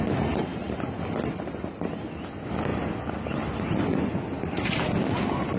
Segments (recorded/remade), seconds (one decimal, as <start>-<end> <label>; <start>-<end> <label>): 0.0-5.6 recorded